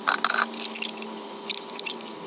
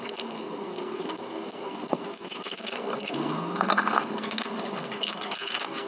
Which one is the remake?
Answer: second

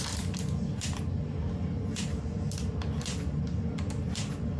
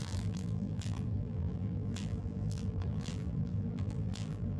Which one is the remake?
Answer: second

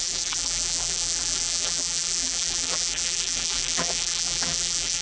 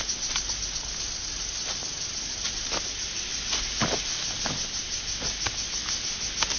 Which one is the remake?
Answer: first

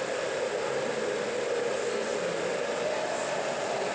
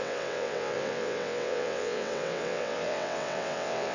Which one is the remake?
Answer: second